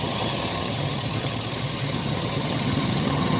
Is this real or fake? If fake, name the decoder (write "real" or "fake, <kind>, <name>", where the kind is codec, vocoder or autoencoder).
fake, vocoder, HiFi-GAN